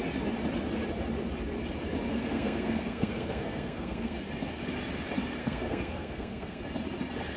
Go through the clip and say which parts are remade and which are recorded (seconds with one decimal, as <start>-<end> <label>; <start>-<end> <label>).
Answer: 0.0-2.1 recorded; 2.1-4.2 remade; 4.2-5.4 recorded; 5.4-6.6 remade; 6.6-7.4 recorded